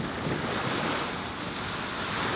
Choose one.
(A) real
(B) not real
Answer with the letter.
A